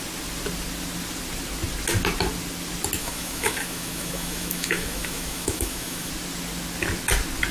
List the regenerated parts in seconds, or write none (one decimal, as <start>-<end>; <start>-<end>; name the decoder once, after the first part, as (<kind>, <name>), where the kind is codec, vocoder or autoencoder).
3.0-6.1 (autoencoder, DAC-VAE)